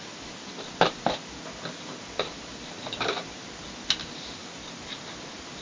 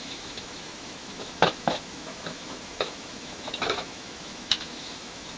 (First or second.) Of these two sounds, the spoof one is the second